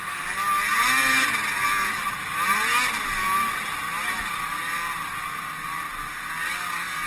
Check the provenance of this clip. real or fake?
real